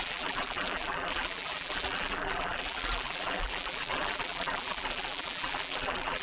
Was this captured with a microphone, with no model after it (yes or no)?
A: no